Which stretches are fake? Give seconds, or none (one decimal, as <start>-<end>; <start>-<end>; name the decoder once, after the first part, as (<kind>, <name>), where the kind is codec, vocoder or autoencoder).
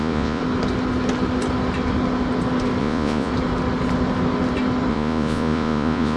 0.0-0.4 (vocoder, Vocos); 2.8-3.3; 4.9-6.2